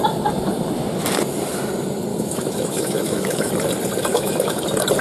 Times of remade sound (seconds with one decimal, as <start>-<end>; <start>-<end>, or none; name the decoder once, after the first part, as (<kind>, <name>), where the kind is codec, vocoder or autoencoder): 2.1-3.5 (autoencoder, DAC-VAE); 4.1-4.6